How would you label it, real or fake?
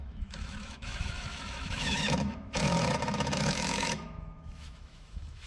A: fake